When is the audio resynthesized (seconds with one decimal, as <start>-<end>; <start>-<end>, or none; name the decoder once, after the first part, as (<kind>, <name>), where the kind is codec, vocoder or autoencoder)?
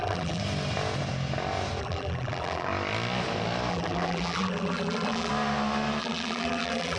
0.0-0.4 (vocoder, BigVGAN v2); 1.8-2.7; 3.7-5.3; 6.0-7.0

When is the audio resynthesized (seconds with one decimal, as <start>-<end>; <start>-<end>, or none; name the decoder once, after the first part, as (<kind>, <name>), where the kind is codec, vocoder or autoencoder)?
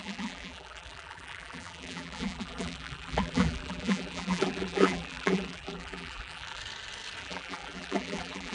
0.0-6.6 (vocoder, BigVGAN v2); 7.2-8.5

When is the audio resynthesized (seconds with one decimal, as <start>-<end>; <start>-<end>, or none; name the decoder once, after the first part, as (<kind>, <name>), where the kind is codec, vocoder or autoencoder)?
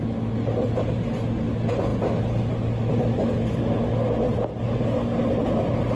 none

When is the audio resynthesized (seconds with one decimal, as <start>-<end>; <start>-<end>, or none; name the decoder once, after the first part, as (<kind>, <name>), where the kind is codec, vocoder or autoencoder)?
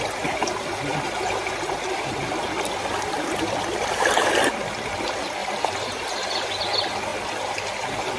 5.4-6.5 (vocoder, BigVGAN v2)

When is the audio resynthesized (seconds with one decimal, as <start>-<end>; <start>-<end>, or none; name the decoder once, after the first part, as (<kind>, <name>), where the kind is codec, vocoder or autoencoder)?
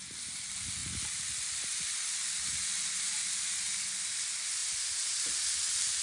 0.8-3.2 (vocoder, BigVGAN v2); 4.6-5.3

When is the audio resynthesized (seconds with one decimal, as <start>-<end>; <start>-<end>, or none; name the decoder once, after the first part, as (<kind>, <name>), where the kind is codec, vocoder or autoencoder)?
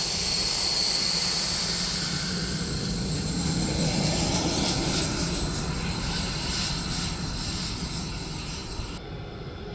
none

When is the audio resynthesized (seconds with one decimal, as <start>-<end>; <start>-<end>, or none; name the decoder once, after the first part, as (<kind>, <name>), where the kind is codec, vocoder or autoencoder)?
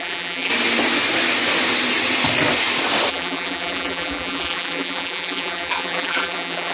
0.0-0.5 (vocoder, BigVGAN v2); 3.1-6.7